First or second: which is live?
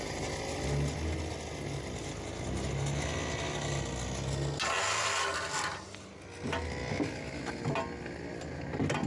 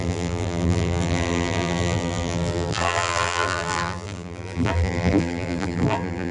first